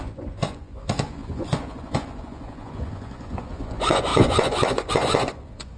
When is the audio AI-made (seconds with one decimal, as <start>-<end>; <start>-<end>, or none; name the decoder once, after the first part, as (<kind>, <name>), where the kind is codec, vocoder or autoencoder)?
0.0-5.8 (vocoder, Vocos)